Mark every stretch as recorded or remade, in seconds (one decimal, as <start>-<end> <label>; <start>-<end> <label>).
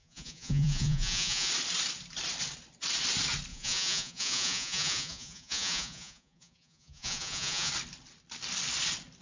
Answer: 0.0-1.5 remade; 1.5-3.5 recorded; 3.5-7.7 remade; 7.7-9.2 recorded